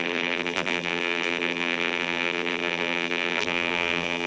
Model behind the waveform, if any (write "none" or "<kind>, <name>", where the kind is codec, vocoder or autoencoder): vocoder, BigVGAN v2